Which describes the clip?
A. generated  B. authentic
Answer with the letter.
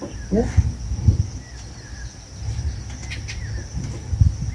B